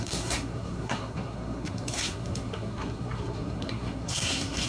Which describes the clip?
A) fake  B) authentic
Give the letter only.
A